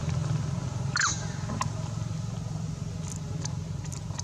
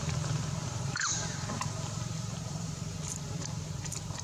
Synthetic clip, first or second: second